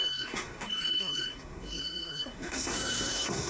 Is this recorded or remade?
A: remade